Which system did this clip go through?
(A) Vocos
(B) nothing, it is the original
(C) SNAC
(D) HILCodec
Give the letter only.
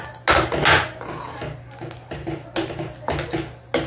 B